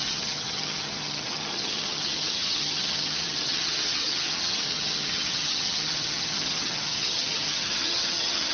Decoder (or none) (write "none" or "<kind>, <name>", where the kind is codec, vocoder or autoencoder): vocoder, HiFi-GAN